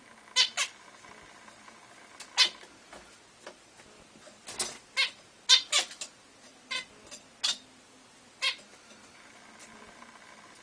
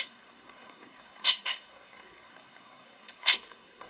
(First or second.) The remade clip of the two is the second